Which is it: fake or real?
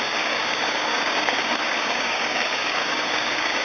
fake